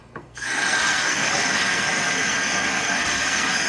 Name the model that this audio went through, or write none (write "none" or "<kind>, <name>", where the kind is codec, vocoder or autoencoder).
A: codec, SNAC